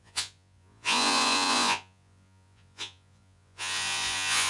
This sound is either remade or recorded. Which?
remade